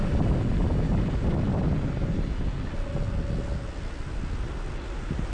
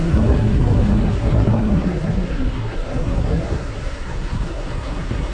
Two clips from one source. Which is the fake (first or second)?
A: second